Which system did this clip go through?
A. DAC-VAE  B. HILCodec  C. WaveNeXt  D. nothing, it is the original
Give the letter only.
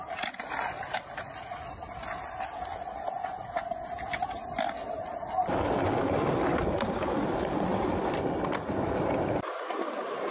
D